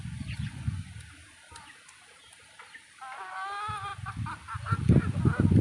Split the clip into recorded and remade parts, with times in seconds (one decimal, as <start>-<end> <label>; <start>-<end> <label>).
0.0-0.9 remade; 0.9-5.6 recorded